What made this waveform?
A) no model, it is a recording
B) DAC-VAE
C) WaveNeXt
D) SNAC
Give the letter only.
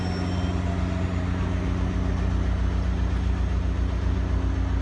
A